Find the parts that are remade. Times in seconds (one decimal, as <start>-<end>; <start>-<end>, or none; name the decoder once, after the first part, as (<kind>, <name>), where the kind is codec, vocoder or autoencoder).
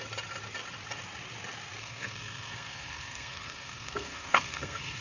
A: 1.8-5.0 (codec, SNAC)